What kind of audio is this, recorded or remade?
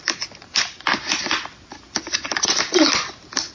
recorded